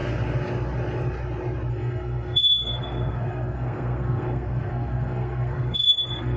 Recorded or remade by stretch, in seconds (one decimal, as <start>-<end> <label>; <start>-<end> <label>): 0.0-1.7 recorded; 1.7-6.4 remade